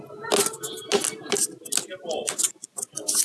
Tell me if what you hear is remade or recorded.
recorded